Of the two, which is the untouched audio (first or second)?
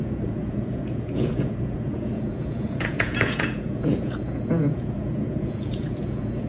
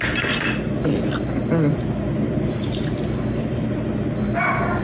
second